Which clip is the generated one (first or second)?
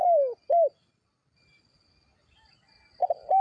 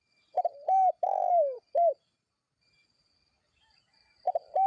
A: second